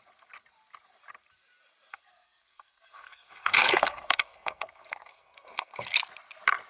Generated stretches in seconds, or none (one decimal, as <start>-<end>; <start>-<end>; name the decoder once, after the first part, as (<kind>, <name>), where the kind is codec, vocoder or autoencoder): 1.9-5.9 (codec, SNAC)